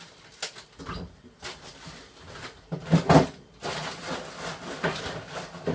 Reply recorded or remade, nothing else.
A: recorded